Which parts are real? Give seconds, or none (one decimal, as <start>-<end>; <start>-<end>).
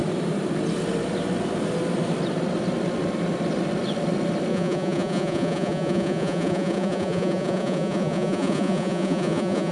0.0-4.5